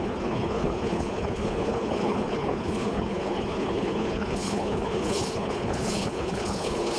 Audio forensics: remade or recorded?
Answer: remade